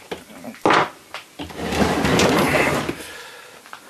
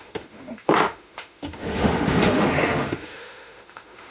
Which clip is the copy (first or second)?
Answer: second